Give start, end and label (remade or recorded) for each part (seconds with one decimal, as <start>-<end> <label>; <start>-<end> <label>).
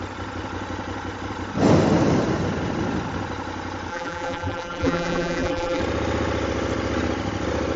0.0-3.9 recorded; 3.9-5.8 remade; 5.8-7.8 recorded